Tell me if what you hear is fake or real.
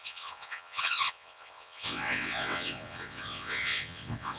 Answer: fake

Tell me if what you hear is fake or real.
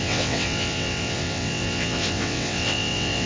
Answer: fake